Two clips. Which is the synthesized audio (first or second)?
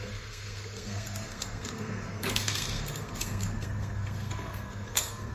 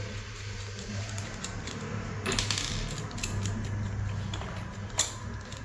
first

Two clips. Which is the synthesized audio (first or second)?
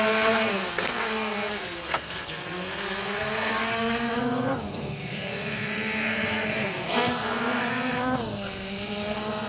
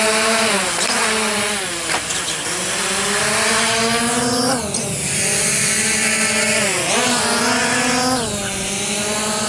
first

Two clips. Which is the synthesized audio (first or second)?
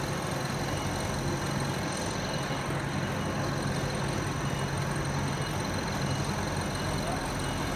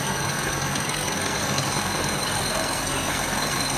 second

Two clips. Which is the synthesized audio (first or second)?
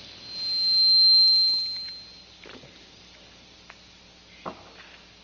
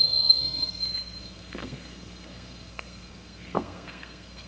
second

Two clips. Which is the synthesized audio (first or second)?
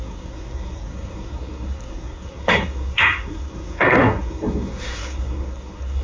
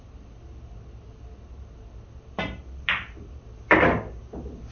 first